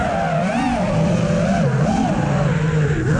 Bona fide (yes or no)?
yes